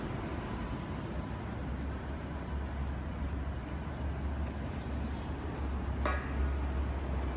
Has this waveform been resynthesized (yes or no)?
no